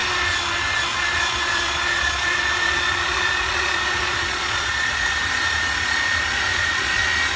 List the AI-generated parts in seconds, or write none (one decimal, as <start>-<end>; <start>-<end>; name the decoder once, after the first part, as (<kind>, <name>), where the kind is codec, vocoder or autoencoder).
0.9-5.2 (vocoder, Vocos); 6.5-7.0